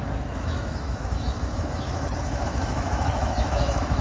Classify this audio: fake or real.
fake